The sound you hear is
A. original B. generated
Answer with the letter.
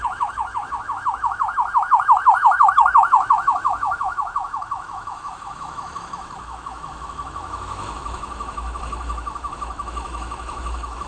B